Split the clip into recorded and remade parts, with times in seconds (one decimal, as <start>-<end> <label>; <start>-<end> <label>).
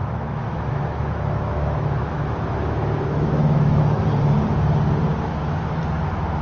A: 0.0-3.8 remade; 3.8-5.1 recorded; 5.1-5.8 remade; 5.8-6.4 recorded